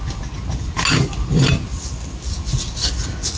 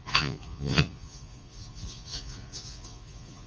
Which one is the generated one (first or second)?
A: second